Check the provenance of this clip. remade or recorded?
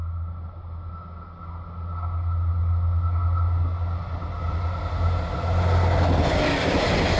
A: recorded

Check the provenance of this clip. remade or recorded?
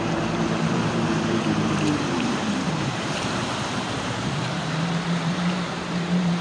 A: remade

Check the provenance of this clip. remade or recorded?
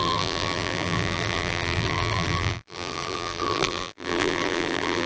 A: remade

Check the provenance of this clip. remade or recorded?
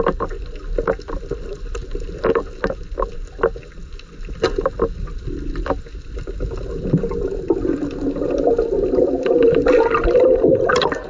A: recorded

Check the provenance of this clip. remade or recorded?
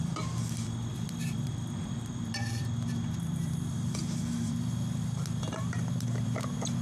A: remade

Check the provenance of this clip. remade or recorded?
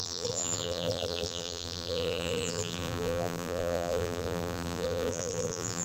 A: remade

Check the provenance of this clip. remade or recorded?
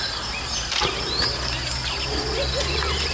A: recorded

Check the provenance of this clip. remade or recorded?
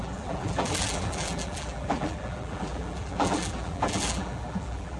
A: remade